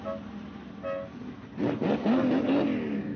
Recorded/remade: recorded